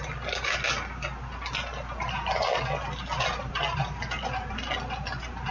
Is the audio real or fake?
real